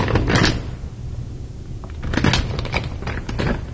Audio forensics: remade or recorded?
recorded